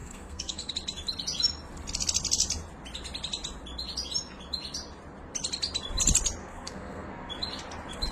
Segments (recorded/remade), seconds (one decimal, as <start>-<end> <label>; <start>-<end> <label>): 0.0-0.7 remade; 0.7-6.4 recorded; 6.4-7.3 remade; 7.3-8.1 recorded